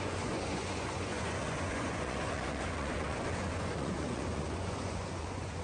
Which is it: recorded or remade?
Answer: remade